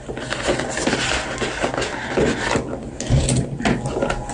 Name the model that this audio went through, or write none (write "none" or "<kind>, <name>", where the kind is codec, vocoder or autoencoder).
none